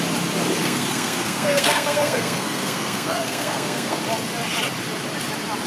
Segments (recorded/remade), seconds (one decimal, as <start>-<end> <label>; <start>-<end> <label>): 0.0-0.6 recorded; 0.6-4.0 remade; 4.0-5.7 recorded